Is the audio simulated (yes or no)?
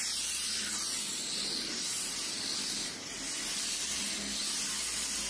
no